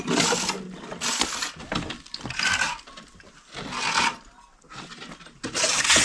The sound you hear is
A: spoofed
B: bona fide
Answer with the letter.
B